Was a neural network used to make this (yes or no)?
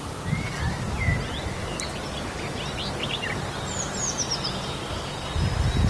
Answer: no